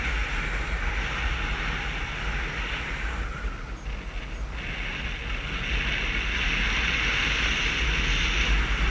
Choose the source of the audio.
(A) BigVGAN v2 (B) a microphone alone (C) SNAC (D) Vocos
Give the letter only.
B